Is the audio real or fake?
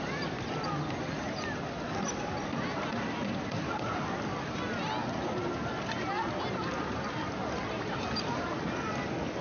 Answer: real